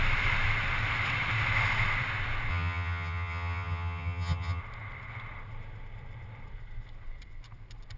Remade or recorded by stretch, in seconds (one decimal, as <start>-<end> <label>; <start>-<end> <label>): 0.0-2.5 recorded; 2.5-4.6 remade; 4.6-8.0 recorded